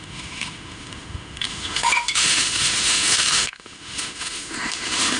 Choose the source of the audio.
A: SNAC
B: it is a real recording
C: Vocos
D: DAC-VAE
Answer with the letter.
D